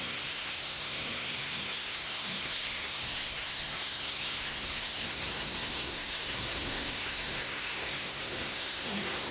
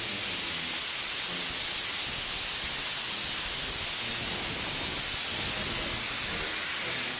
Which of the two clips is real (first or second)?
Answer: second